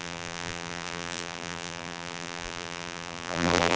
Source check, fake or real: fake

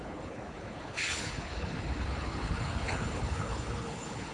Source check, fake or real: fake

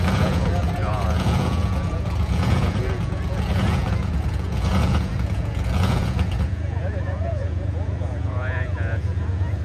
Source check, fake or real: fake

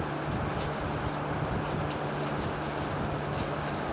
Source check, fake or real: real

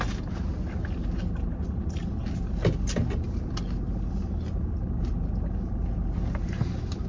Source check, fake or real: real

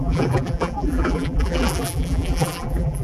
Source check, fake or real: fake